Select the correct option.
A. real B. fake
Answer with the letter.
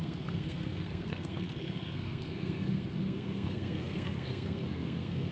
B